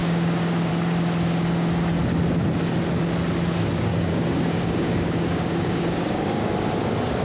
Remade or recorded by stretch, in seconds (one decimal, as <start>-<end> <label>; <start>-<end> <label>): 0.0-0.7 remade; 0.7-3.9 recorded; 3.9-6.5 remade; 6.5-7.2 recorded